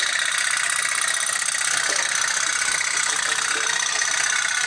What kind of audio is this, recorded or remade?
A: remade